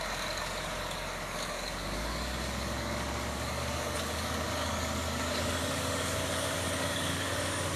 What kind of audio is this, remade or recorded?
remade